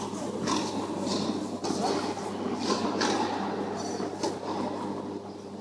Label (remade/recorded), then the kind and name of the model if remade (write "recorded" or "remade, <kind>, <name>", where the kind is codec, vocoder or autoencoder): recorded